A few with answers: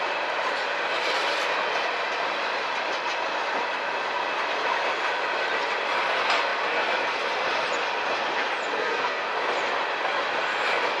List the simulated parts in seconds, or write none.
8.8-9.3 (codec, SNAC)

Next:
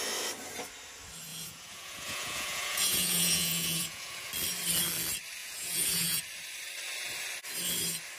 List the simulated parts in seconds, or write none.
1.3-4.3 (vocoder, Vocos); 5.4-6.2

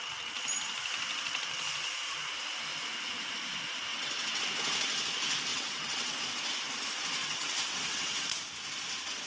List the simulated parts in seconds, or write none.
3.9-4.4 (vocoder, WaveNeXt); 5.5-6.2; 7.2-8.2

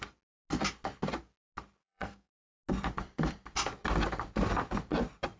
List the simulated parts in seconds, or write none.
1.8-2.5 (codec, SNAC)

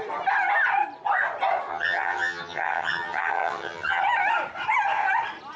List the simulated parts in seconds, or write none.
1.7-4.0 (vocoder, HiFi-GAN)